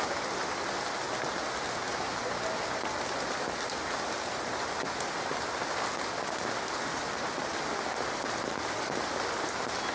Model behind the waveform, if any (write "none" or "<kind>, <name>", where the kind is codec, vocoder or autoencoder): none